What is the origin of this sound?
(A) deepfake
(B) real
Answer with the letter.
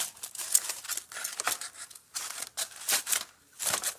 B